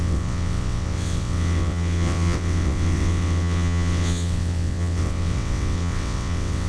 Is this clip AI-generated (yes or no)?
yes